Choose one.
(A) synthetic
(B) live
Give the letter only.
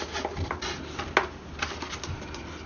B